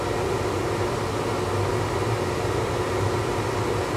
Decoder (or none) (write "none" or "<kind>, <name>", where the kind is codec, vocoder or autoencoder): none